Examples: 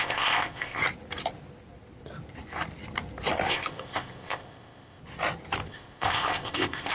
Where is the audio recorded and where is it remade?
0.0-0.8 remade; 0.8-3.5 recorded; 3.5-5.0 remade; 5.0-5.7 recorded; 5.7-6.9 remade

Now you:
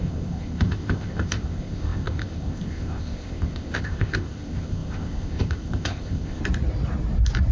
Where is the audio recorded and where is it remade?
0.0-6.4 remade; 6.4-7.5 recorded

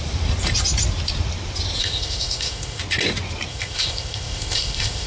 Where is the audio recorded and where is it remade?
0.0-1.8 recorded; 1.8-2.8 remade; 2.8-3.5 recorded; 3.5-5.1 remade